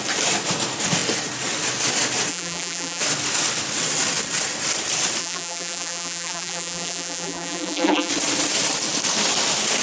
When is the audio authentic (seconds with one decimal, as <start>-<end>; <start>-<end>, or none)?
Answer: 0.0-2.3; 3.0-5.2; 8.1-9.8